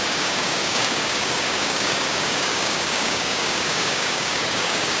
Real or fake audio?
fake